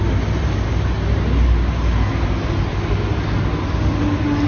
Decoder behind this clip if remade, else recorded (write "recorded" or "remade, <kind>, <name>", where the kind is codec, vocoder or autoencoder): recorded